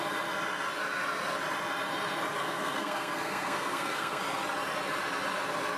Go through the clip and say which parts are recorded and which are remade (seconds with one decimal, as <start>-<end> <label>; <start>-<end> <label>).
0.0-2.4 recorded; 2.4-4.2 remade; 4.2-5.8 recorded